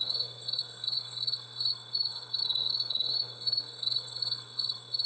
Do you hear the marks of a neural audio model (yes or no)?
yes